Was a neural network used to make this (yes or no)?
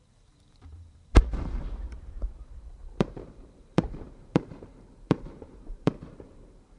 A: yes